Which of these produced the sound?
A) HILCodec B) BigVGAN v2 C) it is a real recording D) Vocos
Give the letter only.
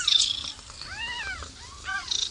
C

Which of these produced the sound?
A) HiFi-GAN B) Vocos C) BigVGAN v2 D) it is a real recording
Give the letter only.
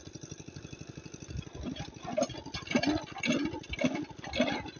D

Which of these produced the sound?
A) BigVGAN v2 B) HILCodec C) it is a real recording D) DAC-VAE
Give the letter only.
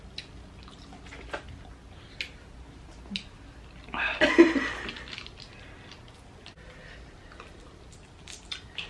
C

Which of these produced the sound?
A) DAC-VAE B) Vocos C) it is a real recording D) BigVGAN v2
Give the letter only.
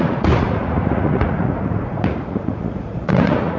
B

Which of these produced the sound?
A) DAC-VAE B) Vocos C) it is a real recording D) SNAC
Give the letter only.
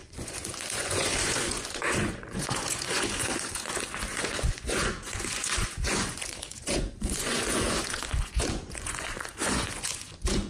B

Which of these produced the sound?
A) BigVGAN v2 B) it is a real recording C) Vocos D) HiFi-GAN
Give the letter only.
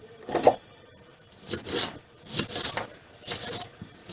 B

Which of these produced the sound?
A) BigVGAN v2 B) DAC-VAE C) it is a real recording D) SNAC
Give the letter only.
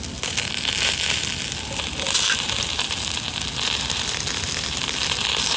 C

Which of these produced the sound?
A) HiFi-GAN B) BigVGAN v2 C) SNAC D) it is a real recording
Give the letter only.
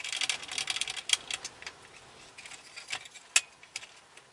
D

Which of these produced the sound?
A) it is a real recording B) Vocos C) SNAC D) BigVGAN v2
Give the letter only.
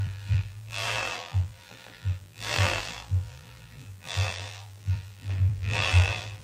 D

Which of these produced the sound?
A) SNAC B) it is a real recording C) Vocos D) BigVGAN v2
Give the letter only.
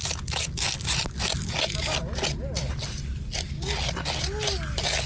B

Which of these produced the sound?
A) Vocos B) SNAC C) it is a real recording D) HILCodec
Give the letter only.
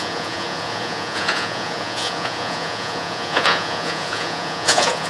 A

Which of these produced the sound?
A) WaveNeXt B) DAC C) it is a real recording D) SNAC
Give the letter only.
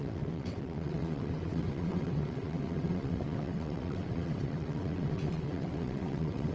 A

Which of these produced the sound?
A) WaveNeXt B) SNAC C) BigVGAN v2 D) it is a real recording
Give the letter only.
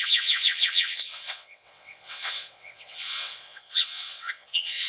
A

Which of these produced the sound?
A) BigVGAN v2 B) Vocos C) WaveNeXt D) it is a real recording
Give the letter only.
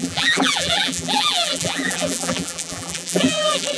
A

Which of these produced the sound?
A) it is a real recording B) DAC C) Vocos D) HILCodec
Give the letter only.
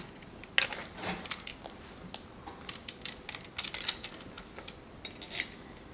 A